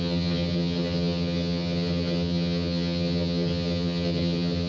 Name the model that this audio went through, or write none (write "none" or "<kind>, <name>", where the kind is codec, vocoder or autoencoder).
vocoder, HiFi-GAN